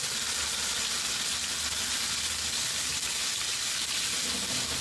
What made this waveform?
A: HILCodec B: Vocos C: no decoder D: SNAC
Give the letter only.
C